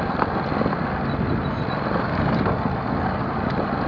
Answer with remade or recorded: recorded